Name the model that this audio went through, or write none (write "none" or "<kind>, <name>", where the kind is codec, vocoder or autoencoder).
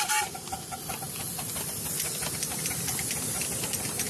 none